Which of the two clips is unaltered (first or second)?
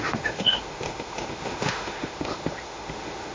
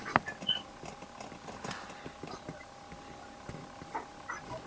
second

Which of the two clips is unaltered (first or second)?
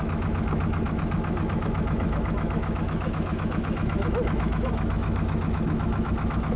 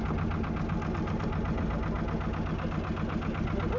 second